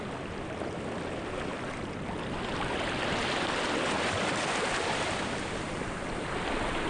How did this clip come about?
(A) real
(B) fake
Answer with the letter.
A